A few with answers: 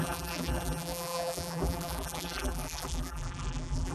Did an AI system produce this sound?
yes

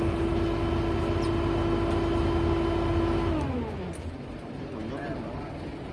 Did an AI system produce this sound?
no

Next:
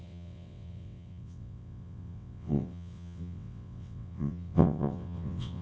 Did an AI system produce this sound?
yes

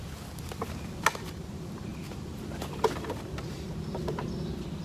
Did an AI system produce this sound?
no